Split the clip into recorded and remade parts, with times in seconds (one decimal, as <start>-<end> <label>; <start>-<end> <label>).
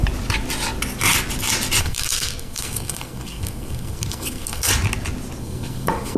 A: 0.0-1.8 recorded; 1.8-4.7 remade; 4.7-5.4 recorded; 5.4-6.2 remade